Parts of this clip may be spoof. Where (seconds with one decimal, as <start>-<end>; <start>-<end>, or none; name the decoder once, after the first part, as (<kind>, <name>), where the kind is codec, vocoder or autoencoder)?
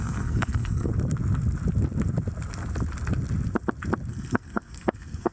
0.0-0.9 (codec, SNAC); 4.1-5.3